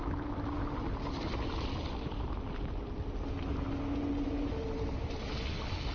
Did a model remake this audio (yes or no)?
no